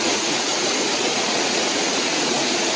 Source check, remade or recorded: remade